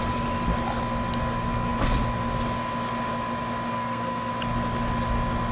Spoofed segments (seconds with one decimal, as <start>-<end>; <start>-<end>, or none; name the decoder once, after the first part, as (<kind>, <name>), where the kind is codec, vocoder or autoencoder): 3.7-4.3 (codec, SNAC)